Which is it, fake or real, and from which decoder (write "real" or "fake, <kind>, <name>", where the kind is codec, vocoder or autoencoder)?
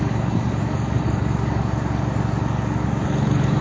fake, codec, DAC